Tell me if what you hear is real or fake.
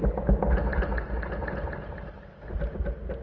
real